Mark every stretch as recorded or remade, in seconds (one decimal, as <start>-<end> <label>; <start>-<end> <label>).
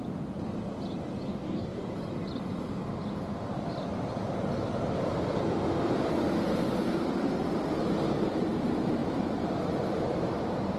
0.0-1.3 recorded; 1.3-1.8 remade; 1.8-10.8 recorded